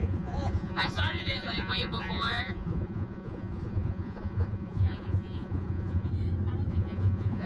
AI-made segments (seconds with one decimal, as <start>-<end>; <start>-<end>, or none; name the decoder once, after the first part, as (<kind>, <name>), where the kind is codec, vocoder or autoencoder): 0.0-6.1 (vocoder, Vocos); 6.7-7.5